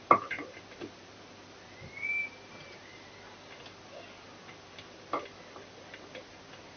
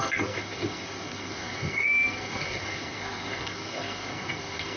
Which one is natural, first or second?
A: first